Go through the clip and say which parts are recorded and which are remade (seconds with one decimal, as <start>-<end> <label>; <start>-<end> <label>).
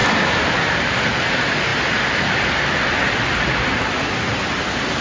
0.0-5.0 recorded